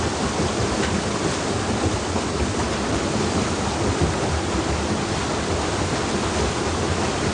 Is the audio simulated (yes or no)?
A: no